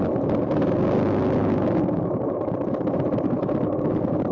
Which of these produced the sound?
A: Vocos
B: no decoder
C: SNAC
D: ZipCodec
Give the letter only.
B